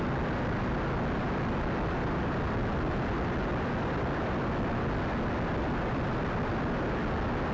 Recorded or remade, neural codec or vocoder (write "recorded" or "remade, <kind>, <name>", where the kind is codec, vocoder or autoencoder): recorded